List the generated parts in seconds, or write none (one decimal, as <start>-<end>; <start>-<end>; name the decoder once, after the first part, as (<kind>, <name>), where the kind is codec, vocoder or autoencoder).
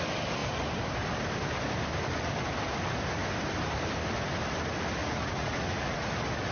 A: 5.0-6.1 (vocoder, Vocos)